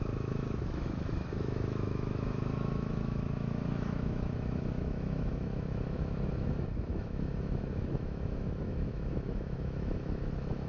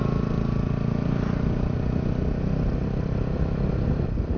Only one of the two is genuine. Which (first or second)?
second